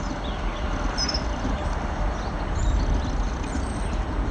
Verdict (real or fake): real